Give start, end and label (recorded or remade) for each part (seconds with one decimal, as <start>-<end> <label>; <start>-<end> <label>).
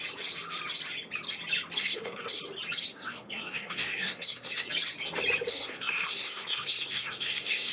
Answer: 0.0-1.8 recorded; 1.8-2.4 remade; 2.4-2.9 recorded; 2.9-4.7 remade; 4.7-5.5 recorded; 5.5-7.7 remade